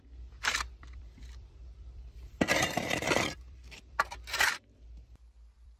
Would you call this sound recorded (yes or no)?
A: no